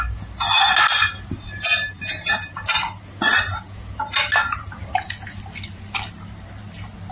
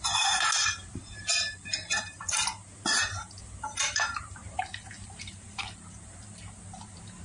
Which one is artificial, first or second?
second